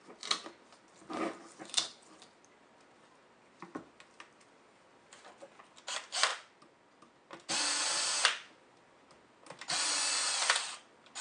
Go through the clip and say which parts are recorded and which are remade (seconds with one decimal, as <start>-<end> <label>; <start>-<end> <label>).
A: 0.0-11.2 recorded